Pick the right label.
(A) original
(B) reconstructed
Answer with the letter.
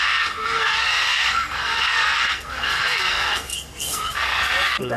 B